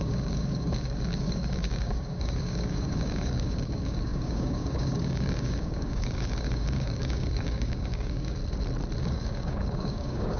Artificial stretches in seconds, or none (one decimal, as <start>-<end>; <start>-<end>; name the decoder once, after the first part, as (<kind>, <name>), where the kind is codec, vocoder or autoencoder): 0.0-8.4 (codec, DAC); 9.0-10.4